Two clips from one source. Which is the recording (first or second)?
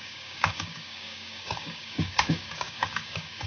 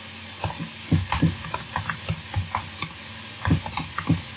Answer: second